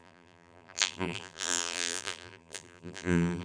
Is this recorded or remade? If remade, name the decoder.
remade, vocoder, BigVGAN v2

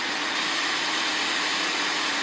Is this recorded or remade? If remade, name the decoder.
remade, vocoder, Vocos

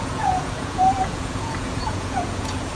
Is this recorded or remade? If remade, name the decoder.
remade, vocoder, Vocos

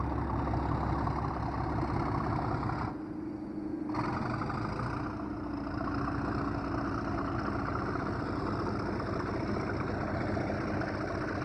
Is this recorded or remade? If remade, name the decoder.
recorded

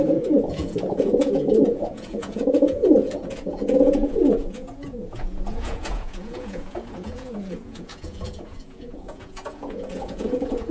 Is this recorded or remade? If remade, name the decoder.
remade, vocoder, Vocos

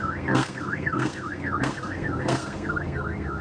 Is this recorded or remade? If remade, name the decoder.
remade, codec, SNAC